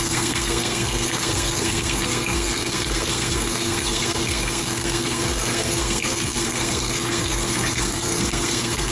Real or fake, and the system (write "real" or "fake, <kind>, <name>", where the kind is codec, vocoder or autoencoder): fake, codec, SNAC